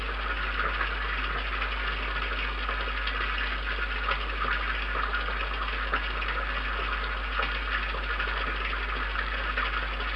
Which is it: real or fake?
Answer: real